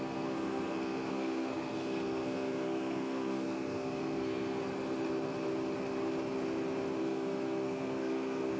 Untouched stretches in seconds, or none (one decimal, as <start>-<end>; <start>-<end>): 4.6-7.0